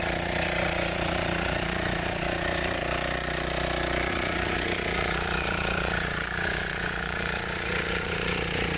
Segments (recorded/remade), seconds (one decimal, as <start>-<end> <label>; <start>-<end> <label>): 0.0-2.8 remade; 2.8-4.1 recorded; 4.1-8.8 remade